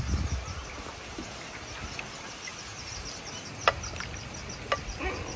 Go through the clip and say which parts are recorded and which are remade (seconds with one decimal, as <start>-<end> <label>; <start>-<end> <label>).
0.0-5.4 recorded